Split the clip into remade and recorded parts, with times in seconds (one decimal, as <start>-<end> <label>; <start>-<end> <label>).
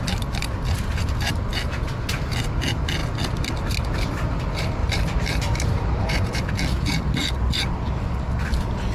0.0-4.8 recorded; 4.8-6.5 remade; 6.5-8.9 recorded